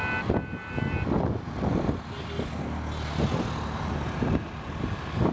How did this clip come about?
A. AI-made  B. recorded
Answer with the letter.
B